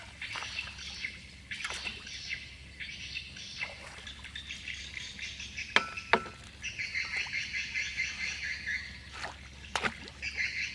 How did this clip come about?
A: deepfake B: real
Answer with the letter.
B